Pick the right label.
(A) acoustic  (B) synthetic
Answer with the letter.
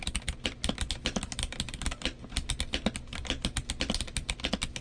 A